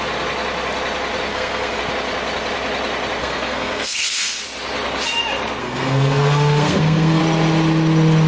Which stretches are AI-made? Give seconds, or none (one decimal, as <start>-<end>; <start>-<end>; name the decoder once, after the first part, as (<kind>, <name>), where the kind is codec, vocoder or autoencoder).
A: 1.3-1.8 (codec, SNAC); 3.2-4.4; 5.6-7.2